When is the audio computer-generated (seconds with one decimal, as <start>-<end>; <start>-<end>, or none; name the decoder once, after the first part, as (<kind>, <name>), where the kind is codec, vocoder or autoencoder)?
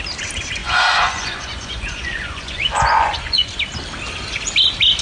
0.6-3.6 (vocoder, Vocos)